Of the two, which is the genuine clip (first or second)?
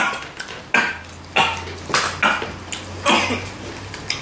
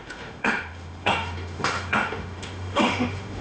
first